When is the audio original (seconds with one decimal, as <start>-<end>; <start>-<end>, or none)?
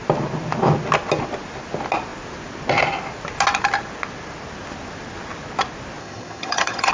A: 0.0-6.0